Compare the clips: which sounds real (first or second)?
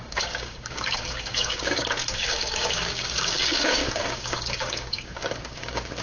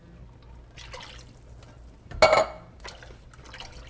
second